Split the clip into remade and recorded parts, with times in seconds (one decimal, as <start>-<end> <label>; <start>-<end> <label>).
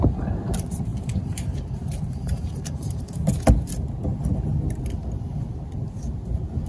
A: 0.0-0.9 recorded; 0.9-3.0 remade; 3.0-6.7 recorded